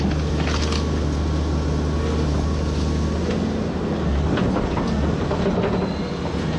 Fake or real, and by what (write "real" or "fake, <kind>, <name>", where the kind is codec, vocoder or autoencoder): real